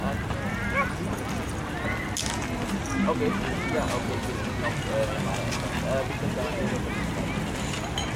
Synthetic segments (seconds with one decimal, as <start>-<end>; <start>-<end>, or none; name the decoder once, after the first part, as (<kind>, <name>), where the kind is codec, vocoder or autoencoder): 6.5-7.0 (vocoder, BigVGAN v2)